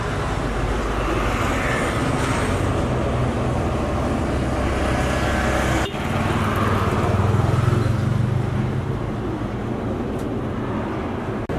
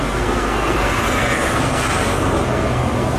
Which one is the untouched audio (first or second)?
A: first